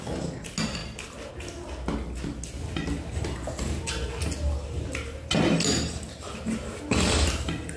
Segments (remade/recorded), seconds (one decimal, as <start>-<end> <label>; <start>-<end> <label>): 0.0-7.8 recorded